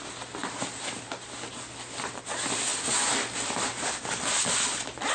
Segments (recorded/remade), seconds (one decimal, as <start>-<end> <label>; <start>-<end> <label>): 0.0-5.1 recorded